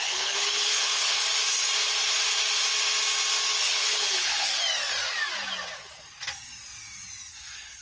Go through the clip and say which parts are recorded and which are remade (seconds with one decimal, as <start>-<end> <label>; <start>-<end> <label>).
0.0-1.2 remade; 1.2-3.6 recorded; 3.6-4.5 remade; 4.5-7.3 recorded; 7.3-7.8 remade

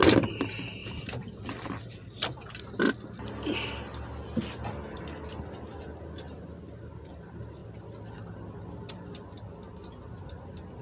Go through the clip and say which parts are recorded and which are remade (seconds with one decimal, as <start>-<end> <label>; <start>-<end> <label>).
0.0-10.8 recorded

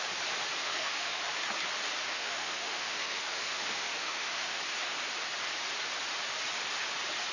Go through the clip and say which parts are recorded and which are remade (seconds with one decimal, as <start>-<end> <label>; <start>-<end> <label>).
0.0-0.6 recorded; 0.6-1.2 remade; 1.2-2.1 recorded; 2.1-4.6 remade; 4.6-7.3 recorded

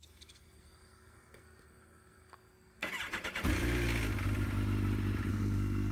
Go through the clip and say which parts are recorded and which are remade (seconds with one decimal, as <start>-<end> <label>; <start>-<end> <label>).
0.0-2.9 remade; 2.9-5.3 recorded; 5.3-5.9 remade

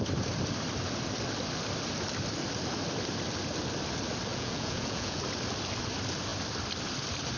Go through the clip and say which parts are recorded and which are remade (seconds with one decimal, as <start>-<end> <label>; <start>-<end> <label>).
0.0-4.3 recorded; 4.3-5.2 remade; 5.2-7.4 recorded

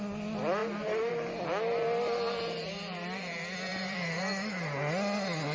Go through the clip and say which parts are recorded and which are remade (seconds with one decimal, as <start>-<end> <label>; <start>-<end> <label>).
0.0-0.6 recorded; 0.6-1.1 remade; 1.1-3.7 recorded; 3.7-4.2 remade; 4.2-5.5 recorded

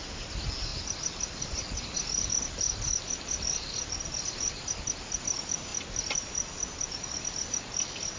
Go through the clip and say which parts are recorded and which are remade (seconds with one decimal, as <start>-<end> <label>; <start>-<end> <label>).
0.0-8.2 recorded

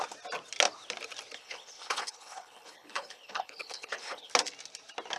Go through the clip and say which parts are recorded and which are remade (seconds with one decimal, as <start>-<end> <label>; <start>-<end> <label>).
0.0-1.4 recorded; 1.4-4.3 remade; 4.3-5.2 recorded